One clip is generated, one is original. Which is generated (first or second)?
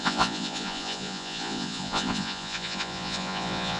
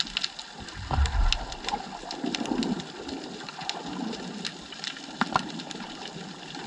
first